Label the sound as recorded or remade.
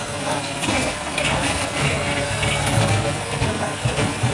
remade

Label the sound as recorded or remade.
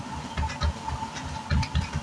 recorded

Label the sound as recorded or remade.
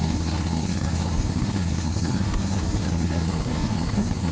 remade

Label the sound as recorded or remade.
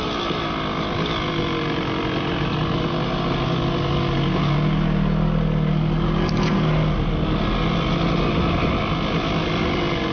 recorded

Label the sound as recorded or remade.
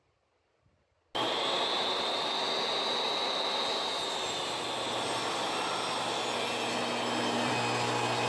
recorded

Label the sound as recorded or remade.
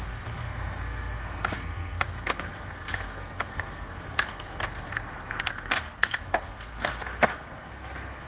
remade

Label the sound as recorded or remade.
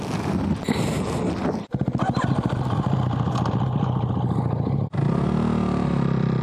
recorded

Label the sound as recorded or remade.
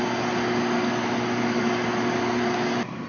recorded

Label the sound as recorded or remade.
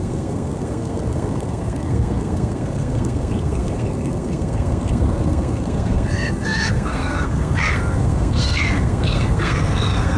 remade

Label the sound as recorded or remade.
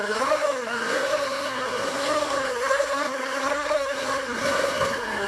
remade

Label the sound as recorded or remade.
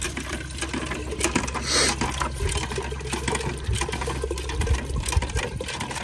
recorded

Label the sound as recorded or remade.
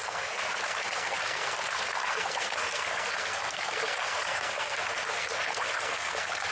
remade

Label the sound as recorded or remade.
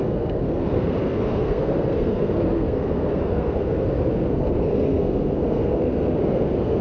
remade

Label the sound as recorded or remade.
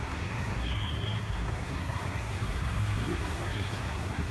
remade